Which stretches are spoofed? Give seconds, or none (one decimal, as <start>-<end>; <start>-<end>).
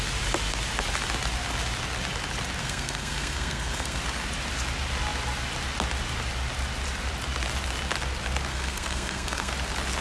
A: 2.6-4.0; 8.5-9.5